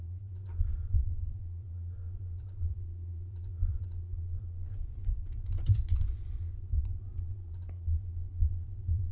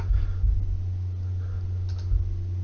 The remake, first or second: first